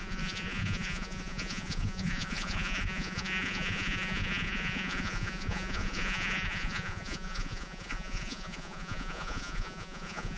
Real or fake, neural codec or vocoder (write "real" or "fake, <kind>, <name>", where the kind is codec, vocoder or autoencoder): fake, vocoder, Vocos